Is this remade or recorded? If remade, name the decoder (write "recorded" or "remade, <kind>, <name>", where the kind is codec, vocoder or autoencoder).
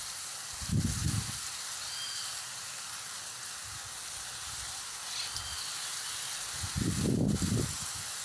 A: recorded